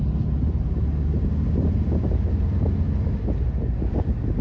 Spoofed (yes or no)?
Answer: no